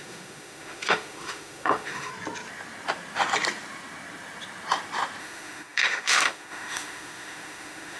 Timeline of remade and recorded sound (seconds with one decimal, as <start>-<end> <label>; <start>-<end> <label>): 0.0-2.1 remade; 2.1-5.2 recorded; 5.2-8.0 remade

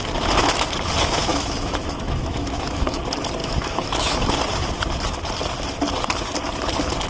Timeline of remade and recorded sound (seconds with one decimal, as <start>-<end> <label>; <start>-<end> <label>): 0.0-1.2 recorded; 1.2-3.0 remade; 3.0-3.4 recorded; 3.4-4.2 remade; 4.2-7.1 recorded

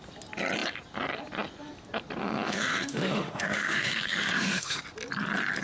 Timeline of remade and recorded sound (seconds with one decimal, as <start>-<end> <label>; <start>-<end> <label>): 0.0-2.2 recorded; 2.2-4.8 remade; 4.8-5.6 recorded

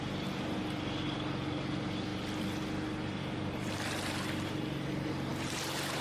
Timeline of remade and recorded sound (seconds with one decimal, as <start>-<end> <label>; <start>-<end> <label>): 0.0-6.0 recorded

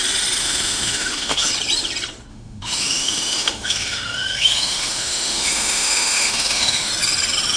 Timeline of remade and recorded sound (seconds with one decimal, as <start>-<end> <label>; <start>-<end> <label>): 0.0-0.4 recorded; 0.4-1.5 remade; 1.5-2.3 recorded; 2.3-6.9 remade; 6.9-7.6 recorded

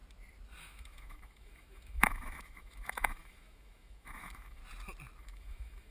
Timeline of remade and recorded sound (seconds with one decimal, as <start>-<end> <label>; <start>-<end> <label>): 0.0-0.6 recorded; 0.6-4.6 remade; 4.6-5.2 recorded; 5.2-5.9 remade

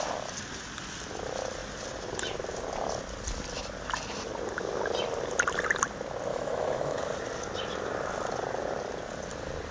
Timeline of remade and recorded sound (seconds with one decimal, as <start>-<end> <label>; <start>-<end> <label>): 0.0-6.3 recorded; 6.3-7.0 remade; 7.0-9.7 recorded

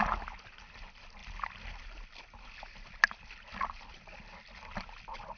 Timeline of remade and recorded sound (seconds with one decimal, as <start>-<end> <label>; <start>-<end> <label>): 0.0-5.4 recorded